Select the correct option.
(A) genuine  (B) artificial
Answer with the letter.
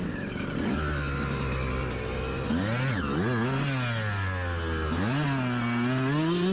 A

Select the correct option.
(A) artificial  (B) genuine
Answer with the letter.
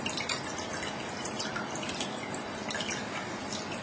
B